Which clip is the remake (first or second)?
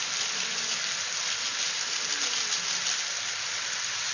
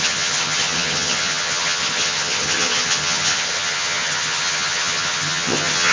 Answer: second